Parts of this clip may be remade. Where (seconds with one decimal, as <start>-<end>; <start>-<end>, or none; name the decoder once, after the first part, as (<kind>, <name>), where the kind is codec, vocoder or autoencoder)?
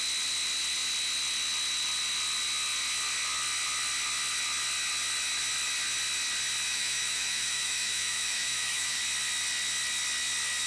6.7-9.0 (autoencoder, DAC-VAE)